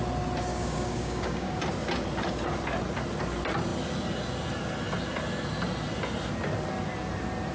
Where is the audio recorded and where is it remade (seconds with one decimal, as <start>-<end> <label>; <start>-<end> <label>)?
0.0-0.5 recorded; 0.5-1.6 remade; 1.6-7.5 recorded